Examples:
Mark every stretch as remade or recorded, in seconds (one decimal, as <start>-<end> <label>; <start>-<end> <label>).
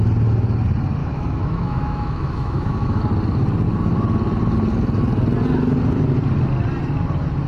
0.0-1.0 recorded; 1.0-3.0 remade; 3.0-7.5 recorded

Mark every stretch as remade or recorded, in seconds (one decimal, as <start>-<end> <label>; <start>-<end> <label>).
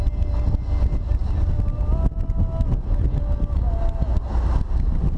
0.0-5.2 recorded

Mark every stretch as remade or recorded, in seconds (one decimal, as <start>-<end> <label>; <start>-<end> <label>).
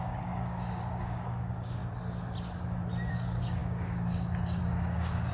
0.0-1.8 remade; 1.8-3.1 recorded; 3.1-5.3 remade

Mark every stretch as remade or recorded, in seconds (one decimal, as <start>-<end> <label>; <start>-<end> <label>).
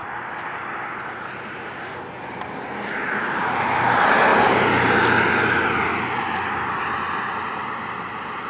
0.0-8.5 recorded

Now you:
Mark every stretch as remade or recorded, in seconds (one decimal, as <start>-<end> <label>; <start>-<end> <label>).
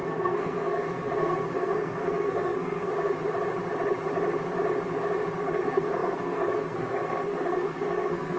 0.0-2.9 remade; 2.9-5.4 recorded; 5.4-8.4 remade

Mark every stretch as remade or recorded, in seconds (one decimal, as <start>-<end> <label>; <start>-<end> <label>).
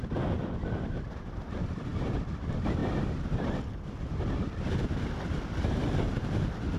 0.0-1.9 remade; 1.9-2.4 recorded; 2.4-6.8 remade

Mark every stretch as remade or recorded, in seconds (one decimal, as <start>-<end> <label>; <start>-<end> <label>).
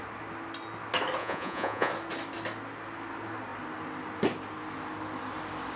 0.0-1.2 recorded; 1.2-1.9 remade; 1.9-5.8 recorded